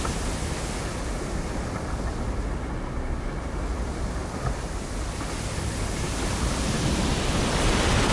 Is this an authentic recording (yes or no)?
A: yes